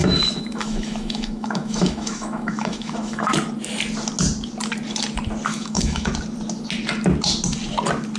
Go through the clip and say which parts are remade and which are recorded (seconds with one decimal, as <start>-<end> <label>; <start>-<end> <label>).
0.0-3.3 remade; 3.3-5.5 recorded; 5.5-6.1 remade; 6.1-8.2 recorded